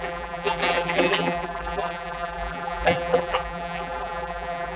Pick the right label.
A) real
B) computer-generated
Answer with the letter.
B